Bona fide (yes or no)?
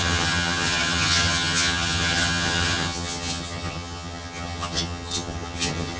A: no